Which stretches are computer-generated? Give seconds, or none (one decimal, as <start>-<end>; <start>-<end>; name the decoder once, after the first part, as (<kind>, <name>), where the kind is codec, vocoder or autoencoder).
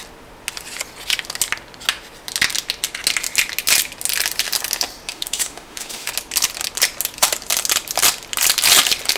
5.1-6.1 (autoencoder, DAC-VAE)